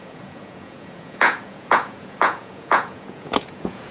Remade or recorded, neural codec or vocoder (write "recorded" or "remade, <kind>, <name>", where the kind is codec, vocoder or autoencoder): remade, vocoder, Vocos